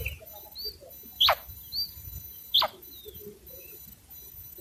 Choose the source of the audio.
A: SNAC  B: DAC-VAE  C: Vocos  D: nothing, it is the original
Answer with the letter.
D